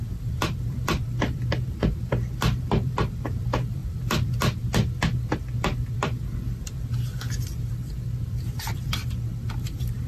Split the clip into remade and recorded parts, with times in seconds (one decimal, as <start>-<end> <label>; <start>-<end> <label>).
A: 0.0-10.1 remade